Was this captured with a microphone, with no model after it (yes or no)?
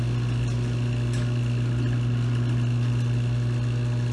yes